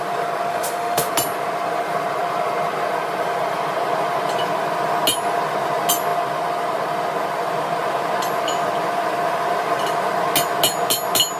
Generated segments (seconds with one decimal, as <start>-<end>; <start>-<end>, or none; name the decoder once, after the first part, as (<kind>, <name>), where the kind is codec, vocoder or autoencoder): 0.5-1.1 (autoencoder, DAC-VAE)